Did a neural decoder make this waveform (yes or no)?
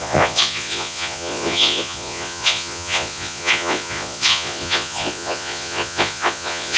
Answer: yes